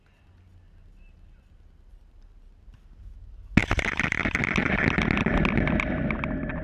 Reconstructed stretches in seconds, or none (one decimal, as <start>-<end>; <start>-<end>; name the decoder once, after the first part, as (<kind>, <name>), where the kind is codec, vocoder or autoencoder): none